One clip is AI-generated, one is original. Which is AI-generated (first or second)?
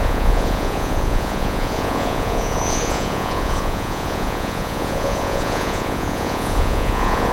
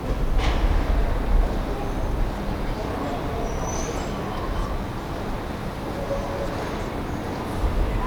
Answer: first